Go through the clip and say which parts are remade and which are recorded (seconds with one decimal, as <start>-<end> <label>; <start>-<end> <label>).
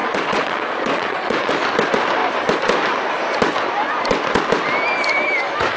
0.0-1.5 remade; 1.5-5.8 recorded